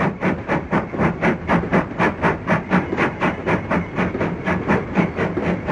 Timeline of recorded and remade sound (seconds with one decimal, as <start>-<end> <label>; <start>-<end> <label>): 0.0-5.7 recorded